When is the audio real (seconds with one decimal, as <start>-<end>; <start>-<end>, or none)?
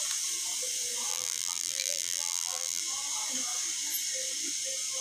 0.0-1.1; 2.8-5.0